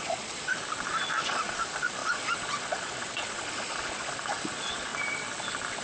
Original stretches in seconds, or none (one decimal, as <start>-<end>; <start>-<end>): 0.5-1.2; 4.9-5.8

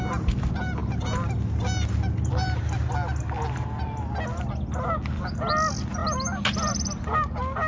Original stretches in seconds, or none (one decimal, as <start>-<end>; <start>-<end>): 0.0-7.7

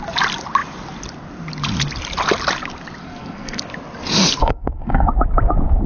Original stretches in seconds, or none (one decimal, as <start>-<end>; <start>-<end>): 0.0-3.0; 3.6-4.4; 5.1-5.9

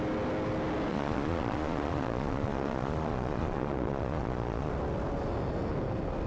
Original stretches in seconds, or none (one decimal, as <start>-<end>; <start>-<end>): 0.0-0.9; 4.7-6.3

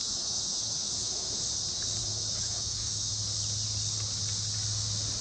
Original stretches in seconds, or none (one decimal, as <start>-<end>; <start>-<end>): 1.3-2.0; 3.1-5.2